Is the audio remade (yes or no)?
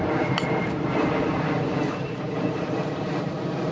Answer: yes